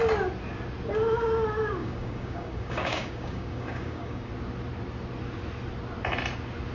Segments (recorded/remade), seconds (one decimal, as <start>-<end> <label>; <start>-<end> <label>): 0.0-1.8 recorded; 1.8-4.3 remade; 4.3-6.7 recorded